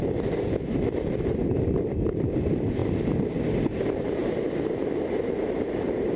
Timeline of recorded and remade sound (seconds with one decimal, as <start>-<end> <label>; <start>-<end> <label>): 0.0-6.2 recorded